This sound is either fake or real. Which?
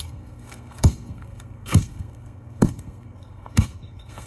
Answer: fake